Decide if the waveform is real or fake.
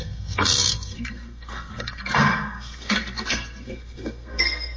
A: fake